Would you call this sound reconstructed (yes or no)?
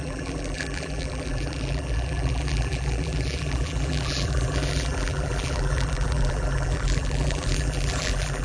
yes